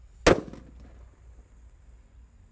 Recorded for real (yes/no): yes